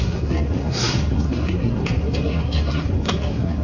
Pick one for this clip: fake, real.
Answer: fake